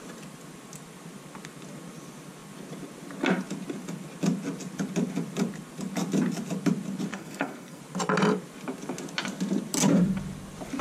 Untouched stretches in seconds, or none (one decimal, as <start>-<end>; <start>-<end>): 0.0-7.1; 7.8-10.8